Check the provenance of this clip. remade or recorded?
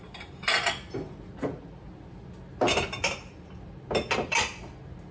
recorded